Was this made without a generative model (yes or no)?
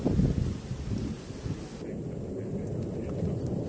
yes